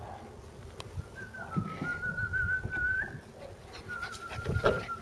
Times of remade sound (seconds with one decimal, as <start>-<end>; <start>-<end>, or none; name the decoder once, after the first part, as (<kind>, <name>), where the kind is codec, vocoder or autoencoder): none

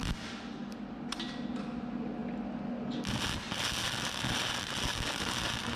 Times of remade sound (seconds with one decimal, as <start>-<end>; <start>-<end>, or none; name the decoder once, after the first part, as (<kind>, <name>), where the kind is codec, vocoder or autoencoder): none

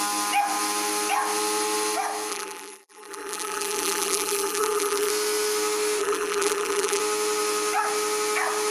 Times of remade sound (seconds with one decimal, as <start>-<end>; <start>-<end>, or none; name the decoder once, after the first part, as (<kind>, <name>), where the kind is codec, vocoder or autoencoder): 2.3-5.1 (vocoder, BigVGAN v2); 6.0-7.0

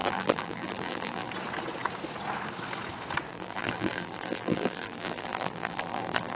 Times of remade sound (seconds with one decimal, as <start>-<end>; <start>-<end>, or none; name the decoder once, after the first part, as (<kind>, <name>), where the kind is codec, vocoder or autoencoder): 0.0-1.3 (vocoder, BigVGAN v2); 3.3-6.4

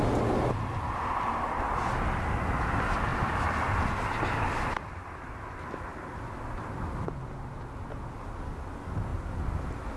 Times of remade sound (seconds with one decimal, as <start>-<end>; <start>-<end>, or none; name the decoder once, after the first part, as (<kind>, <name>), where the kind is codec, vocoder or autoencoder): 3.1-6.9 (vocoder, BigVGAN v2)

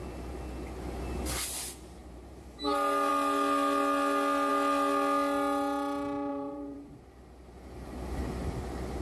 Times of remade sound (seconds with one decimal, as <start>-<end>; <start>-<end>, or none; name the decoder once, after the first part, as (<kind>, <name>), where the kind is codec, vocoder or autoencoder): 2.0-2.6 (vocoder, BigVGAN v2); 6.3-7.0